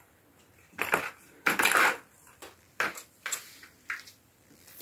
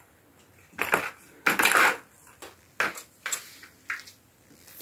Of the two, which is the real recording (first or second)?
second